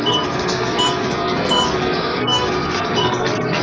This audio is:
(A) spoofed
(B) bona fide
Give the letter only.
A